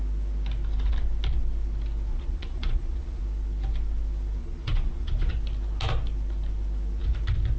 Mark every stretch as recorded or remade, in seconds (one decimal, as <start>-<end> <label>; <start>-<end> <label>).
0.0-2.1 recorded; 2.1-3.2 remade; 3.2-4.4 recorded; 4.4-5.3 remade; 5.3-7.6 recorded